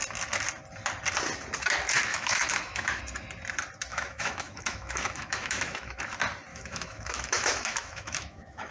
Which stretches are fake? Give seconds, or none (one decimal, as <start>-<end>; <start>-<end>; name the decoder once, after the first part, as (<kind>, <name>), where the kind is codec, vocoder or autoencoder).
2.1-3.0 (autoencoder, DAC-VAE); 3.9-6.0; 6.5-8.7